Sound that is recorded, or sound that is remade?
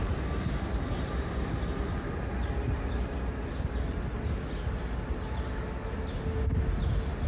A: recorded